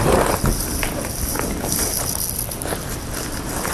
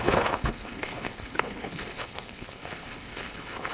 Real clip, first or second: first